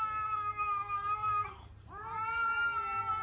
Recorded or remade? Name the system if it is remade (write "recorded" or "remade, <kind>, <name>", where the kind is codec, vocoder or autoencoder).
remade, vocoder, BigVGAN v2